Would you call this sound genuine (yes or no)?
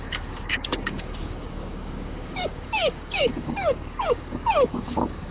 no